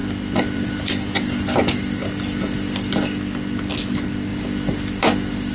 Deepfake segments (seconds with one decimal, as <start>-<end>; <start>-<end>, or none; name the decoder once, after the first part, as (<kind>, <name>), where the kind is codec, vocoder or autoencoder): 0.0-1.6 (vocoder, BigVGAN v2)